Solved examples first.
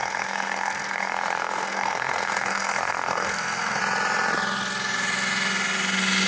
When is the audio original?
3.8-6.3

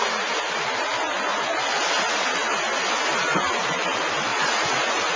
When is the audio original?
0.0-1.3; 1.8-4.3

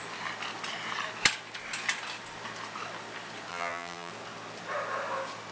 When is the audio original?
0.0-3.5; 4.1-5.5

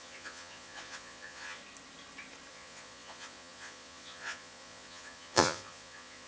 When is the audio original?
1.6-2.5

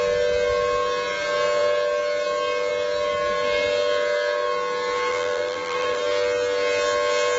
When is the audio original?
0.0-5.1; 6.0-7.4

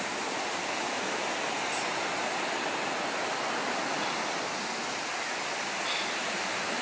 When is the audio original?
0.0-6.8

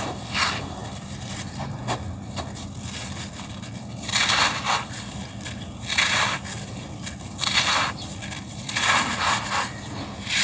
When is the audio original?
0.0-10.4